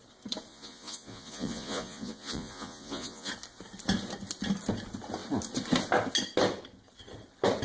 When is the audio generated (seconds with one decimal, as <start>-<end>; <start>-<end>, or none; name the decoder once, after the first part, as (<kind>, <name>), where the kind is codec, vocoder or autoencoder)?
0.5-3.3 (vocoder, Vocos)